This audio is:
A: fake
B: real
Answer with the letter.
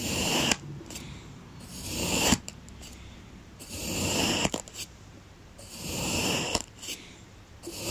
A